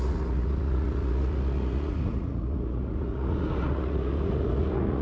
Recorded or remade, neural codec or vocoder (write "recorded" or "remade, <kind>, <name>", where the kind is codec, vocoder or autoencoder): remade, vocoder, Vocos